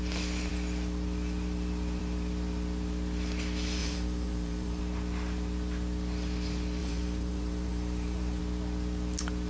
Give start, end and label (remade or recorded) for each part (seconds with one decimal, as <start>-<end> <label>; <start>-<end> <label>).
0.0-3.8 recorded; 3.8-4.8 remade; 4.8-6.8 recorded; 6.8-8.4 remade; 8.4-9.5 recorded

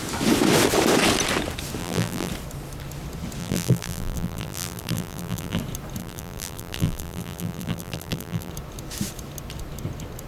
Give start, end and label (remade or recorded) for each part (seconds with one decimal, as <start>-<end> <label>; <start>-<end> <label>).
0.0-1.8 recorded; 1.8-2.3 remade; 2.3-3.4 recorded; 3.4-5.6 remade; 5.6-6.0 recorded; 6.0-8.5 remade; 8.5-10.3 recorded

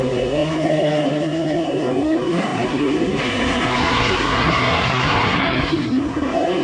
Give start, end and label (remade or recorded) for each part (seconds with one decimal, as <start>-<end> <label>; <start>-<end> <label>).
0.0-6.6 remade

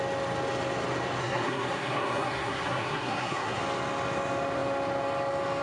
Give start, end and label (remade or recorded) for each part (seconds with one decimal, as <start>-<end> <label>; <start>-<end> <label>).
0.0-1.2 recorded; 1.2-3.6 remade; 3.6-5.6 recorded

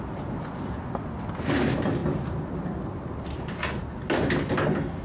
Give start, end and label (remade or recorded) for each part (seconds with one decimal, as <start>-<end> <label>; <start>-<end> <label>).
0.0-5.0 recorded

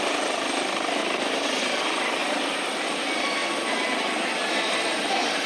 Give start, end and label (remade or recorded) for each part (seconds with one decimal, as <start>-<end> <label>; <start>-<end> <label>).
0.0-3.4 remade; 3.4-5.1 recorded; 5.1-5.5 remade

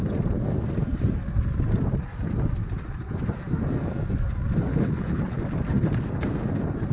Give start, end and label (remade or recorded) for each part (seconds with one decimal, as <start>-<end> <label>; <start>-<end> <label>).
0.0-4.7 recorded; 4.7-5.4 remade; 5.4-6.9 recorded

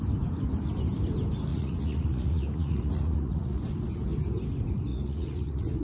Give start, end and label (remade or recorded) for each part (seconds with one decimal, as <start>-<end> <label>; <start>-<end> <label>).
0.0-1.5 recorded; 1.5-3.6 remade; 3.6-4.9 recorded; 4.9-5.8 remade